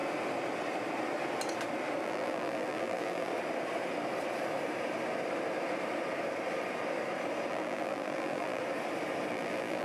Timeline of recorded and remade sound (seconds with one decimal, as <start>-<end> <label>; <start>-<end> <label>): 0.0-2.0 recorded; 2.0-3.3 remade; 3.3-7.5 recorded; 7.5-8.6 remade; 8.6-9.3 recorded; 9.3-9.8 remade